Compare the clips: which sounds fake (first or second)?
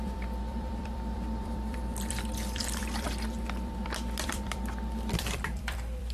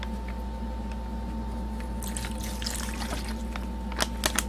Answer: first